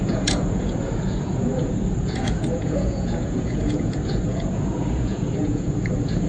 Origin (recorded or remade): remade